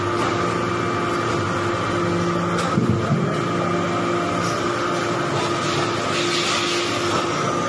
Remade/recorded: recorded